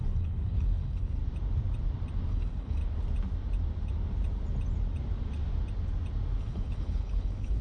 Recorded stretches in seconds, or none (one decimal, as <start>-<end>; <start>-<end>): 1.2-2.3; 2.8-6.4